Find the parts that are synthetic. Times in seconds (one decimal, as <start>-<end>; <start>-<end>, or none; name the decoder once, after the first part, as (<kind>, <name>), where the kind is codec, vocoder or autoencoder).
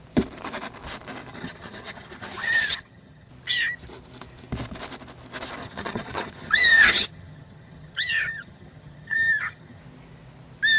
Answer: 1.3-3.3 (vocoder, HiFi-GAN); 5.6-9.8